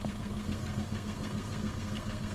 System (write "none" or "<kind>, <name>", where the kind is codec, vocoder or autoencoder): codec, SNAC